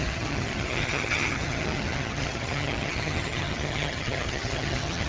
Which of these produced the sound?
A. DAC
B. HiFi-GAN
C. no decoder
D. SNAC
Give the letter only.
B